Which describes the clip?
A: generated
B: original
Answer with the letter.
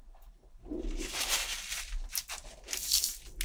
B